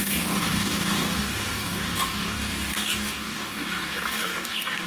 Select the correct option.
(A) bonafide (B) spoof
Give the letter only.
B